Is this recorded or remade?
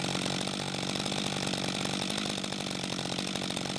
recorded